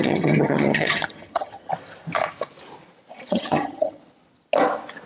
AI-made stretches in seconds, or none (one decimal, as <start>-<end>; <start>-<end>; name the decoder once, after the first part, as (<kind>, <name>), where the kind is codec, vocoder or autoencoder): 0.0-1.7 (vocoder, HiFi-GAN); 3.3-4.0

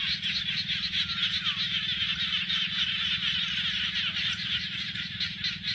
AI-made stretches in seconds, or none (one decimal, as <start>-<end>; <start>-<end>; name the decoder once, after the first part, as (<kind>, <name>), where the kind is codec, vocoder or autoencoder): none